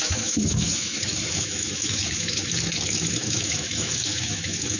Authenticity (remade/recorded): remade